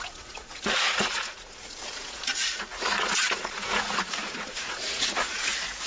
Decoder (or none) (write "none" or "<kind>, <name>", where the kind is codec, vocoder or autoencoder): vocoder, Vocos